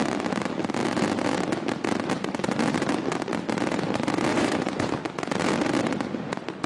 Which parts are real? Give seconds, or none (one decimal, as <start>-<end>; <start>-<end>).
0.0-4.3; 4.9-6.7